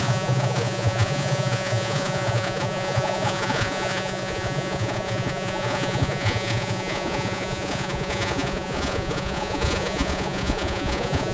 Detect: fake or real fake